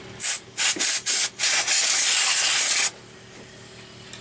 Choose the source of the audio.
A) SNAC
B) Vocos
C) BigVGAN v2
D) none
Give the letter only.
D